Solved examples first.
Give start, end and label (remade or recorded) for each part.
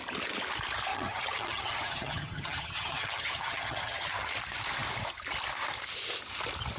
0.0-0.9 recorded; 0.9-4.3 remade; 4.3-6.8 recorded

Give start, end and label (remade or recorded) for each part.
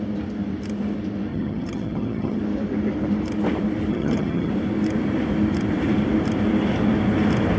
0.0-1.3 recorded; 1.3-2.4 remade; 2.4-3.9 recorded; 3.9-4.5 remade; 4.5-7.6 recorded